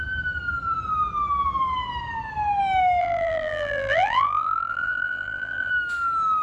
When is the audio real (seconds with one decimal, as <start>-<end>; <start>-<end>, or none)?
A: 0.0-3.0; 5.7-6.4